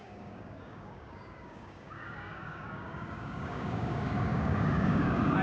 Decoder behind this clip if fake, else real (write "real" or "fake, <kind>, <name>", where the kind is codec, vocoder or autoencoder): fake, codec, DAC